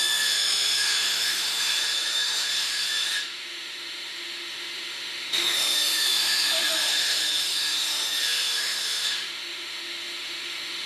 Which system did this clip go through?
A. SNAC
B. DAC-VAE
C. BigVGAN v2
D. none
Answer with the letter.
B